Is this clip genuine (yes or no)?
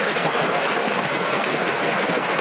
no